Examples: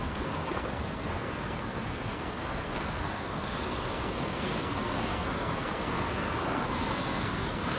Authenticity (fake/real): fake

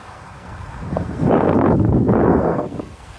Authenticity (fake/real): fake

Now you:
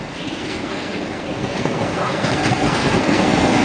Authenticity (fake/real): fake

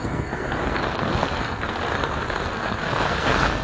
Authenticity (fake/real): fake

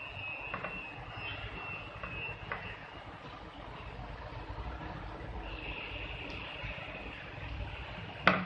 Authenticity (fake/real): real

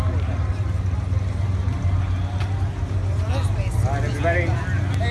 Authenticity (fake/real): real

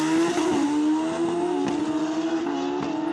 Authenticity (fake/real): real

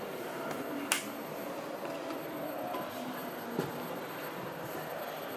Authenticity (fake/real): real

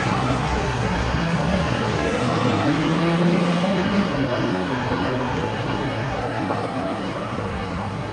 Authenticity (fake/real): fake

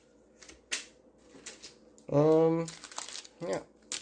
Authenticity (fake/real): real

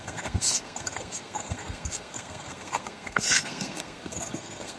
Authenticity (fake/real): fake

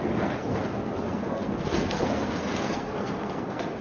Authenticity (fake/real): fake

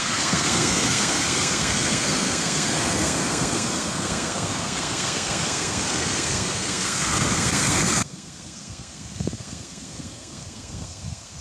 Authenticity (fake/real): fake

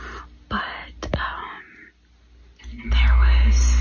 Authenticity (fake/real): real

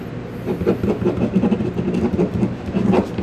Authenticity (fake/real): real